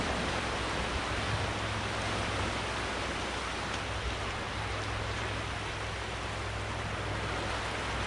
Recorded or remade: recorded